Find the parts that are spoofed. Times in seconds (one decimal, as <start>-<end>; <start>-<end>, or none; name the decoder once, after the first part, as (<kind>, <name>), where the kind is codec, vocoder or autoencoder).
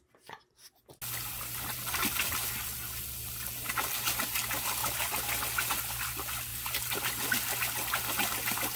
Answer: none